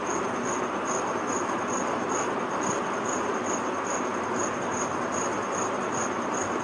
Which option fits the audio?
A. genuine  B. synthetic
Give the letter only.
A